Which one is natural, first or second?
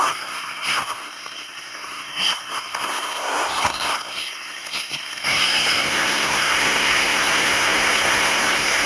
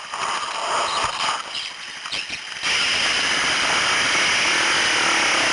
second